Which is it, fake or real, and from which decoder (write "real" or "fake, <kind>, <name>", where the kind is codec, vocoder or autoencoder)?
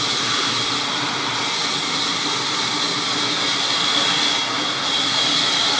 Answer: real